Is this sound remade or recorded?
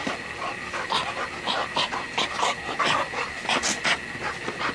recorded